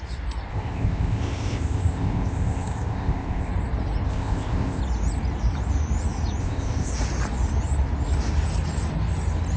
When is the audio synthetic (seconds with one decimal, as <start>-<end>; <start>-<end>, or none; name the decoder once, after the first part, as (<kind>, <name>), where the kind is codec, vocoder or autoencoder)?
0.5-3.5 (codec, ZipCodec); 4.1-4.8; 6.4-6.9